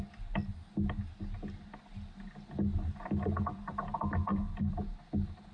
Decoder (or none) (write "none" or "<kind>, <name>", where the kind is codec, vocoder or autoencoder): none